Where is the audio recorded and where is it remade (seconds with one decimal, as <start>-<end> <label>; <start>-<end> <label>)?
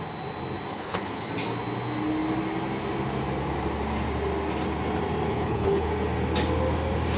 0.0-0.7 recorded; 0.7-1.3 remade; 1.3-5.3 recorded; 5.3-5.9 remade; 5.9-7.2 recorded